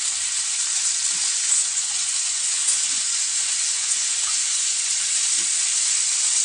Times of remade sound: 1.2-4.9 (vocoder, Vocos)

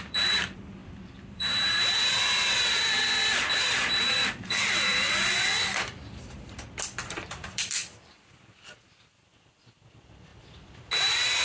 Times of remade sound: 0.0-4.9 (vocoder, BigVGAN v2); 7.0-10.3; 11.0-11.4